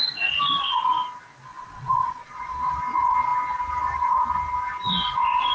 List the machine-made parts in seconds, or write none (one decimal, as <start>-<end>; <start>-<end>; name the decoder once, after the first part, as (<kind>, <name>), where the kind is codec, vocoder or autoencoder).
1.5-2.8 (vocoder, Vocos)